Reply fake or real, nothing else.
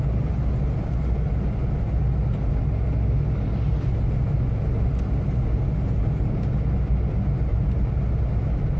real